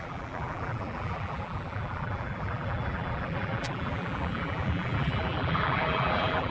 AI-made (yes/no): yes